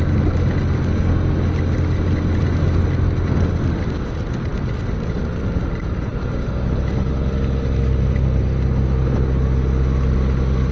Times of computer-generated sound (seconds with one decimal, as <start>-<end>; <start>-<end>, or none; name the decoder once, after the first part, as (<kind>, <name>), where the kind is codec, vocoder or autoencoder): none